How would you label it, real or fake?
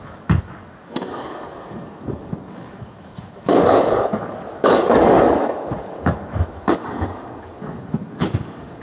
fake